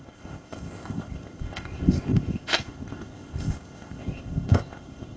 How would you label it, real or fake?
fake